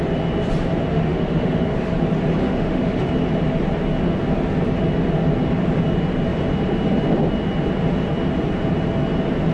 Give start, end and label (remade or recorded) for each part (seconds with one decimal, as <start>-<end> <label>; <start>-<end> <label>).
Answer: 0.0-0.9 recorded; 0.9-1.9 remade; 1.9-2.4 recorded; 2.4-3.1 remade; 3.1-9.5 recorded